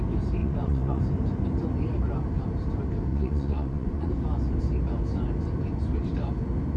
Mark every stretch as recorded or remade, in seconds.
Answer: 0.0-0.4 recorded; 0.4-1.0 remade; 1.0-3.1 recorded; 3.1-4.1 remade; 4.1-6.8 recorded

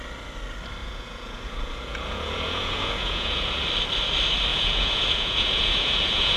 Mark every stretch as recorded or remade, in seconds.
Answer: 0.0-0.8 recorded; 0.8-3.6 remade; 3.6-4.5 recorded; 4.5-6.4 remade

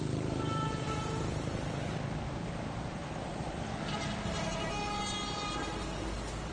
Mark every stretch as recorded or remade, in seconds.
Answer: 0.0-6.5 recorded